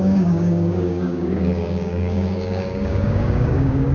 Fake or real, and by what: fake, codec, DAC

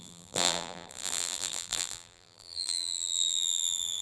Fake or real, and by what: fake, vocoder, BigVGAN v2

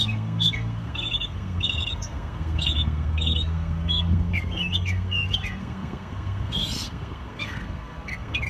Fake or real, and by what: fake, codec, SNAC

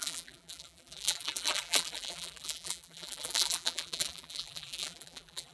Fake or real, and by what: fake, vocoder, BigVGAN v2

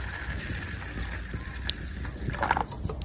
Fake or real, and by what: real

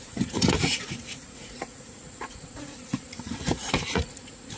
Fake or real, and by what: fake, vocoder, Vocos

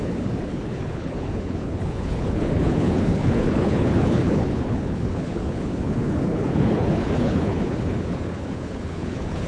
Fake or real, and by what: fake, codec, HILCodec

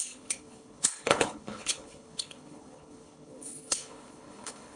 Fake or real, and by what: fake, codec, HILCodec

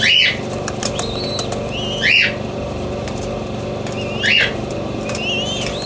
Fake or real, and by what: real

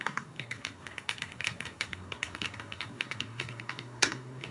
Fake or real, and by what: fake, codec, SNAC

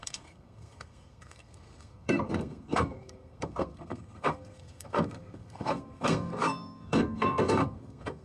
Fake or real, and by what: fake, codec, SNAC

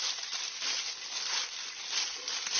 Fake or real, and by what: real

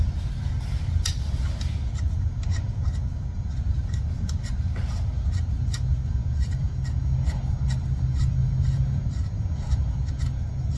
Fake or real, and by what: real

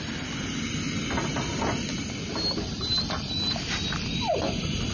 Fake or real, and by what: real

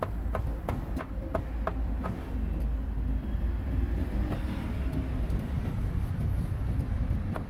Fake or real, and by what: real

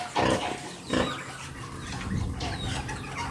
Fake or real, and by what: real